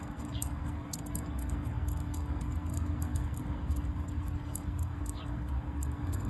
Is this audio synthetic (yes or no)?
yes